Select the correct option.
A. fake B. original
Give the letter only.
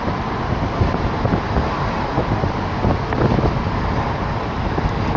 B